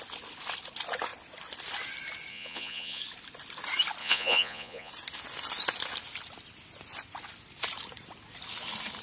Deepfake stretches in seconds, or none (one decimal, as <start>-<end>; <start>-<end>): 2.3-3.0; 4.0-4.9